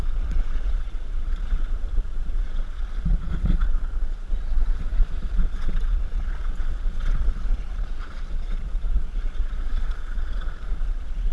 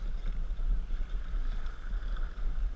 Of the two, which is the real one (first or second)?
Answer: second